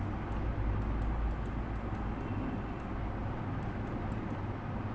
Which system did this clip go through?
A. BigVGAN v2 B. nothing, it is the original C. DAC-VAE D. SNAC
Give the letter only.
B